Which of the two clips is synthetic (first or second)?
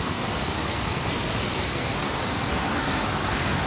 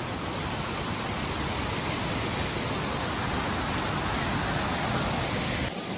first